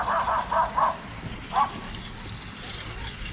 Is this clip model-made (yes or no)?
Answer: no